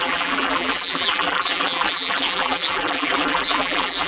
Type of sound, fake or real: fake